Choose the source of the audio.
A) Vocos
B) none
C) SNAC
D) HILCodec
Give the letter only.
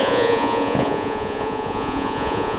A